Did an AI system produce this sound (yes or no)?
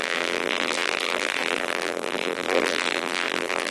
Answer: yes